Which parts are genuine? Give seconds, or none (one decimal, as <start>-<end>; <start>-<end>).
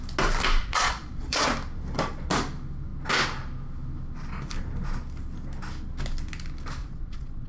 0.0-0.6; 1.5-6.8